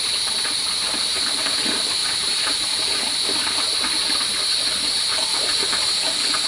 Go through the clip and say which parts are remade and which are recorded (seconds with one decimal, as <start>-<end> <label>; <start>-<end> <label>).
0.0-2.0 recorded; 2.0-3.2 remade; 3.2-5.3 recorded; 5.3-5.9 remade; 5.9-6.5 recorded